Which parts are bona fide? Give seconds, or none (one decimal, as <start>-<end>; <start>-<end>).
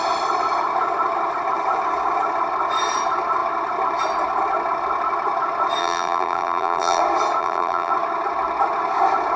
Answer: 0.0-5.8; 7.0-7.4; 7.9-9.4